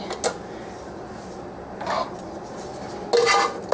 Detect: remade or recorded recorded